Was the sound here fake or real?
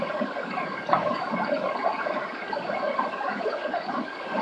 fake